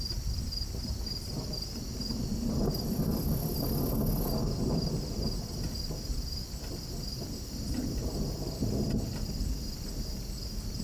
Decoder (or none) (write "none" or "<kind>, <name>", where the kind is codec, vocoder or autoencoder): none